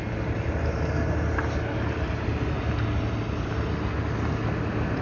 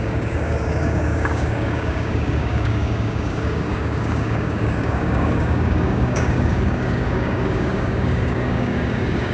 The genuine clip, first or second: first